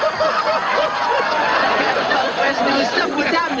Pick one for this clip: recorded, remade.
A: remade